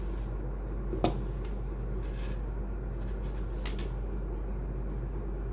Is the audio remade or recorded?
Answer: recorded